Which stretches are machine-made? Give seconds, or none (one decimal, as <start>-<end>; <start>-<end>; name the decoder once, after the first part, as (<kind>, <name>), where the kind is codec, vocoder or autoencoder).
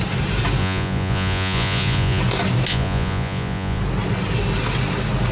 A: 0.6-2.2 (vocoder, Vocos); 2.7-3.8